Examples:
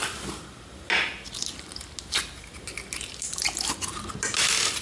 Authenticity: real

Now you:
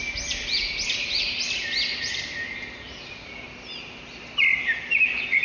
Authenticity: real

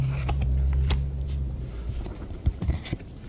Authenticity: fake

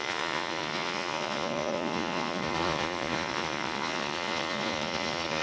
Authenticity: fake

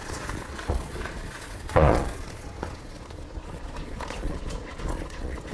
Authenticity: fake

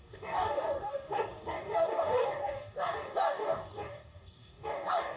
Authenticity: fake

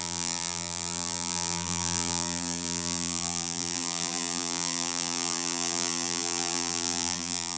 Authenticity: fake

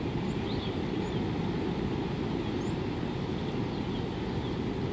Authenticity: real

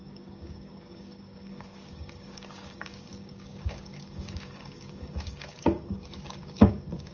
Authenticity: fake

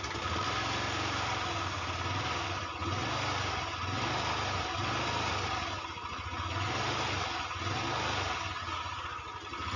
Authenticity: real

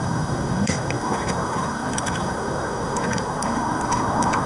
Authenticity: fake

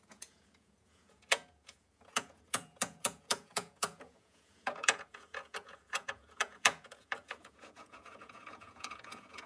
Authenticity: fake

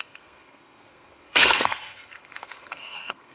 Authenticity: fake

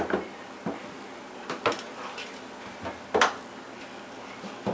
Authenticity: real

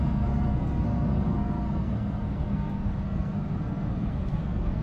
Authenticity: fake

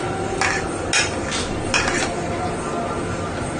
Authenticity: real